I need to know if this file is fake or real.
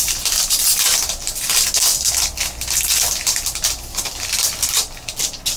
real